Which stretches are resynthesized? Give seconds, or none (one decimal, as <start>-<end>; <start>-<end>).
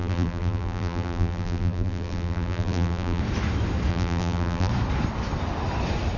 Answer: 0.0-3.2; 3.9-4.7